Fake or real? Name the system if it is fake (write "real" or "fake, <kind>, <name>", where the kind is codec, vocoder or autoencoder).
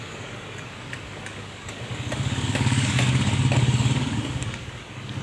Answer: fake, codec, DAC